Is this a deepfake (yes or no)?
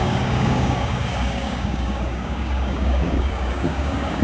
yes